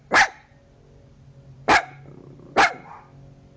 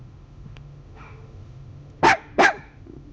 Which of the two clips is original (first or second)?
first